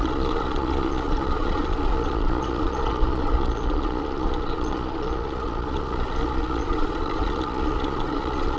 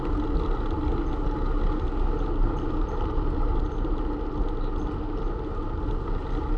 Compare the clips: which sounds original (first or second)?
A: second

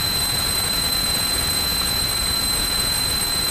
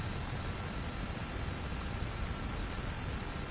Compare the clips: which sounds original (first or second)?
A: second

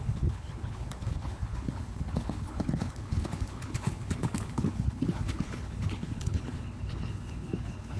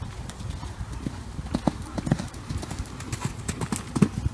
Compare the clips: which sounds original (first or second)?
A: second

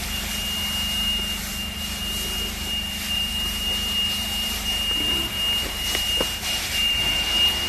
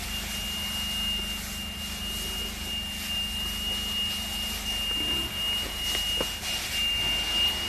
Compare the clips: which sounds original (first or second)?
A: second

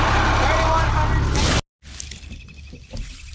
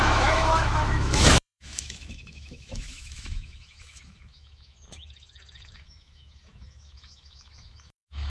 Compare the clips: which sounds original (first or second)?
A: first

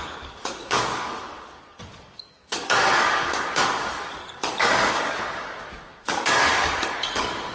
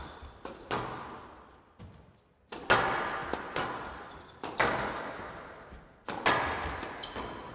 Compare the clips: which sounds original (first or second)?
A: second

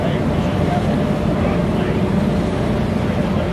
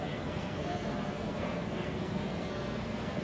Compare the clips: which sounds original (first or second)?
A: first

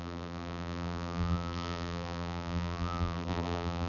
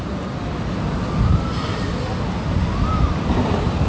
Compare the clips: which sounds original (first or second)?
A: second